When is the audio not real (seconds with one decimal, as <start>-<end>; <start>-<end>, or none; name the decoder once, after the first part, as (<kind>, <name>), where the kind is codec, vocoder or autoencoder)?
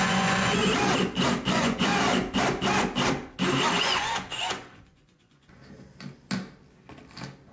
0.0-0.6 (vocoder, Vocos); 1.5-1.9; 3.7-5.6